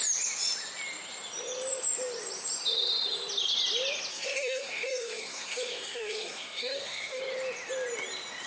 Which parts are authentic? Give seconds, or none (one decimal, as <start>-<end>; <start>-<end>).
0.0-4.1; 7.2-8.5